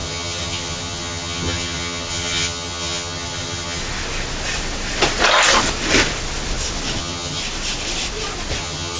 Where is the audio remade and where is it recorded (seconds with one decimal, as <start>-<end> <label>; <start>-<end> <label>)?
0.0-3.8 remade; 3.8-7.0 recorded; 7.0-7.4 remade; 7.4-8.6 recorded; 8.6-9.0 remade